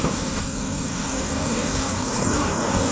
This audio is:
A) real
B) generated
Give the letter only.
B